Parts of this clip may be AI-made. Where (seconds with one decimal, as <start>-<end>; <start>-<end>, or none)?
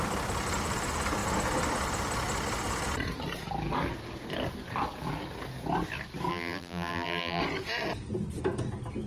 6.3-7.4